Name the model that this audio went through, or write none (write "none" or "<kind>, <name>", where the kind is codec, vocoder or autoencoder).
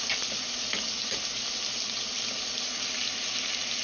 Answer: none